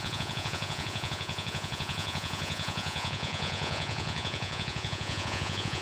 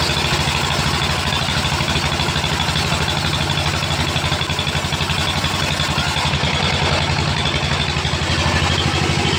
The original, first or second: second